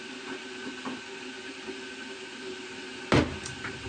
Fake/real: real